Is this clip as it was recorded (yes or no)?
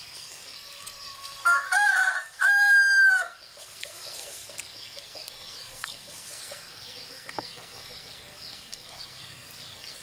no